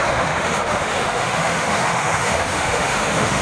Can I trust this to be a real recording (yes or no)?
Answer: no